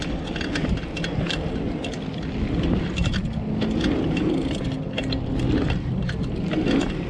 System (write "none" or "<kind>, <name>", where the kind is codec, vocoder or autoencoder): none